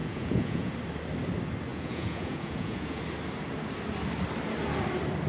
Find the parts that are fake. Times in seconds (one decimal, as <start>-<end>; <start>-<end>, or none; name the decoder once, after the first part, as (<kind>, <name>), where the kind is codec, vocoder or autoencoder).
0.0-0.7 (vocoder, Vocos); 1.7-3.0